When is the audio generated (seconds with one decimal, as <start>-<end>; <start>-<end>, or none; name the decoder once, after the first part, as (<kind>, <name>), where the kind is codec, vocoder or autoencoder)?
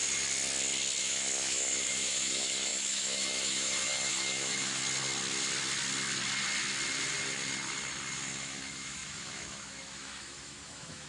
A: 1.0-4.8 (autoencoder, DAC-VAE); 8.4-11.1